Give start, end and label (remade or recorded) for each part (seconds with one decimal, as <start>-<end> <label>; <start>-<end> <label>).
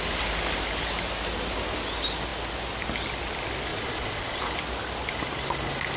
0.0-3.7 recorded; 3.7-4.4 remade; 4.4-6.0 recorded